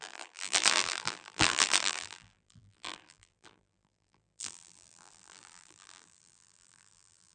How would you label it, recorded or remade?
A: remade